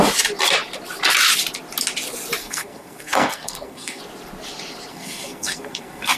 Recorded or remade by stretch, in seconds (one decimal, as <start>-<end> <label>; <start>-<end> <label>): 0.0-2.4 recorded; 2.4-4.0 remade; 4.0-4.9 recorded; 4.9-6.2 remade